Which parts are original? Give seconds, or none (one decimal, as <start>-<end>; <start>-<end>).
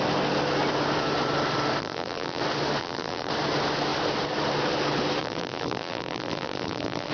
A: 0.0-1.8; 2.4-2.8; 3.3-5.2